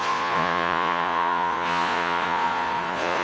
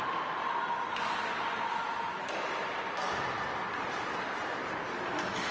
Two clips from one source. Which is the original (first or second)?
second